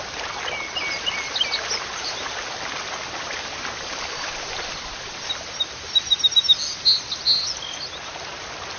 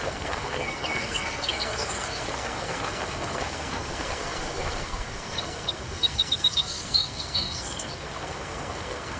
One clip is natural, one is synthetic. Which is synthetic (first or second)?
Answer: second